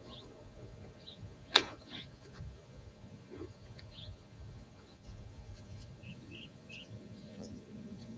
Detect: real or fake fake